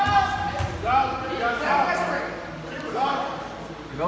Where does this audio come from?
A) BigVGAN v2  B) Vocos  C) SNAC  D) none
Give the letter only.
D